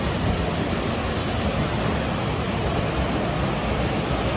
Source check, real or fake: real